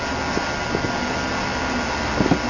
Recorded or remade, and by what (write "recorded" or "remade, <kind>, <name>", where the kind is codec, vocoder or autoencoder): recorded